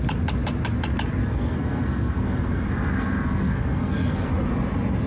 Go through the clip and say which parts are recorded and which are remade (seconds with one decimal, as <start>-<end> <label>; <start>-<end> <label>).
0.0-1.2 recorded; 1.2-4.3 remade; 4.3-5.1 recorded